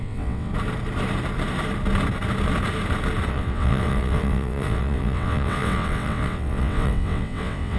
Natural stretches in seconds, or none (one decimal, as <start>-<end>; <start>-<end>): 0.5-3.3